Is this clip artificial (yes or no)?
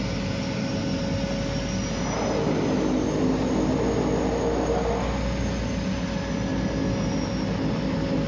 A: no